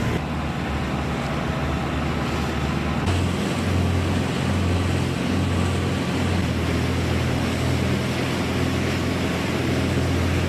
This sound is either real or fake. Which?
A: real